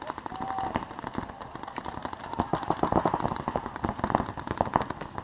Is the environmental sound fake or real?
real